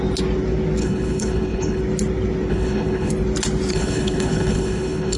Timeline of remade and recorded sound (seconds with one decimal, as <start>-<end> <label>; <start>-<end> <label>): 0.0-0.8 recorded; 0.8-1.8 remade; 1.8-2.5 recorded; 2.5-3.1 remade; 3.1-3.7 recorded; 3.7-5.2 remade